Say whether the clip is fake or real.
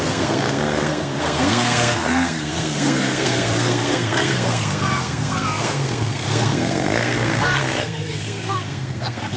fake